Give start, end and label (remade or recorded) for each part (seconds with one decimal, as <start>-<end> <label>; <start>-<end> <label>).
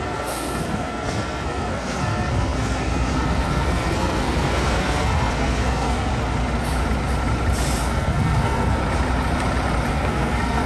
0.0-6.1 remade; 6.1-7.8 recorded; 7.8-8.8 remade; 8.8-9.9 recorded; 9.9-10.7 remade